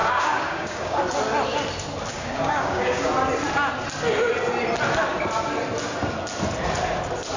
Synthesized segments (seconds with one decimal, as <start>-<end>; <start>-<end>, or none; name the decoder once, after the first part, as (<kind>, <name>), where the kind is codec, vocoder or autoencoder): 0.0-1.0 (codec, DAC); 2.1-3.1